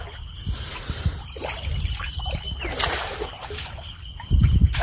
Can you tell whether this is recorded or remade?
recorded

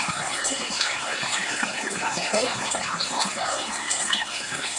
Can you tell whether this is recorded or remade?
remade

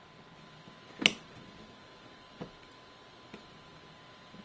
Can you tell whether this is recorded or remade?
recorded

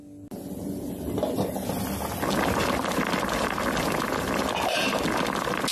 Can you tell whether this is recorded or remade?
recorded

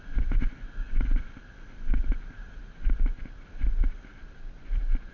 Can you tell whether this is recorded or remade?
recorded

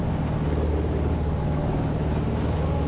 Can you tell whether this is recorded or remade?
recorded